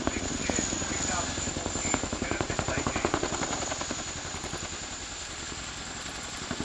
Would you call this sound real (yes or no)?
yes